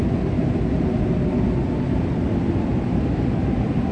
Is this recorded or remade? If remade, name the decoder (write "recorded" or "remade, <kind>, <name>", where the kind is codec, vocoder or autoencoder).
recorded